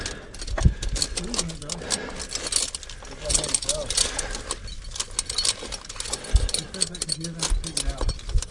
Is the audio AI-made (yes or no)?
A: no